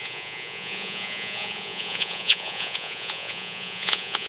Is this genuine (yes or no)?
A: no